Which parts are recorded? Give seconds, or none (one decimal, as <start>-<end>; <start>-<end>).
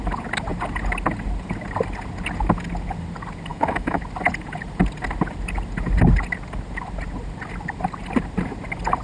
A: 0.0-3.5; 4.0-9.0